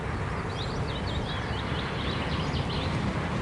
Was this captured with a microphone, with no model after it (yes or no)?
yes